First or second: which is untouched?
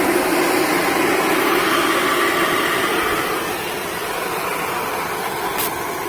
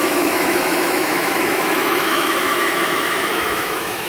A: first